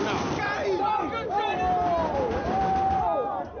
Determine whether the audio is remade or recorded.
recorded